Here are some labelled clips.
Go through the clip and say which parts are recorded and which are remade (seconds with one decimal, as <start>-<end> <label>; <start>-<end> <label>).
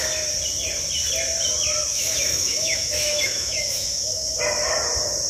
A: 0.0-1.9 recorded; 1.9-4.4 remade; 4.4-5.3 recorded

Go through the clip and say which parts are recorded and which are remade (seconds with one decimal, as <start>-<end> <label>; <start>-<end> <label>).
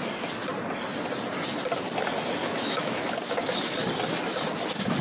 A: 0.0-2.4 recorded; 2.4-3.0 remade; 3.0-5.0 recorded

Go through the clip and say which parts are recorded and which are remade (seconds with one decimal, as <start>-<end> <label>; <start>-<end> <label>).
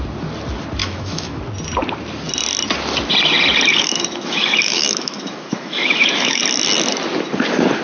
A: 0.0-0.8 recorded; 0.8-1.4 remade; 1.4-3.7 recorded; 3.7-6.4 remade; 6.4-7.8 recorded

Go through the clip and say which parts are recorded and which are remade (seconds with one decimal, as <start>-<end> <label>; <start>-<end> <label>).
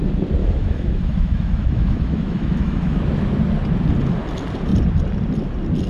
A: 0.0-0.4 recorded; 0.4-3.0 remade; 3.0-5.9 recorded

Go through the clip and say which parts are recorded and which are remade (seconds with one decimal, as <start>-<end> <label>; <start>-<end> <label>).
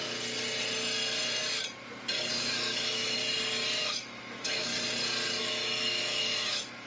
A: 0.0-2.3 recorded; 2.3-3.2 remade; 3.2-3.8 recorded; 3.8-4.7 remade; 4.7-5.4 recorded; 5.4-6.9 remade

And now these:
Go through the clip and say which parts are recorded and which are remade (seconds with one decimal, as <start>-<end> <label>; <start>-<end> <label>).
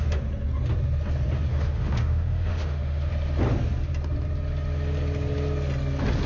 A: 0.0-1.5 recorded; 1.5-3.1 remade; 3.1-6.3 recorded